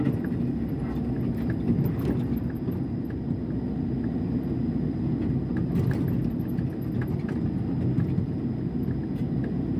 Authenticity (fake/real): real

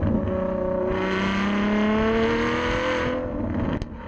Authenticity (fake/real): real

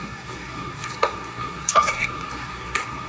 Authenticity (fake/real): fake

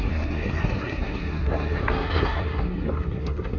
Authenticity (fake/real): fake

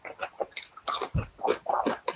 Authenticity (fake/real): real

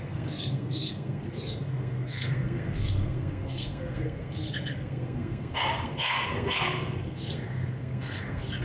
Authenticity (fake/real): fake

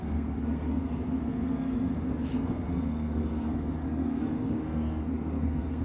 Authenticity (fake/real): fake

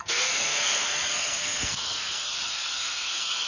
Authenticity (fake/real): fake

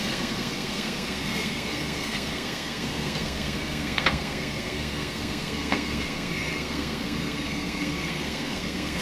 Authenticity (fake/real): fake